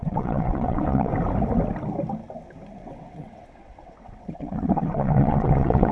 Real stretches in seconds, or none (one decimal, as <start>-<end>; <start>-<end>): 1.1-2.8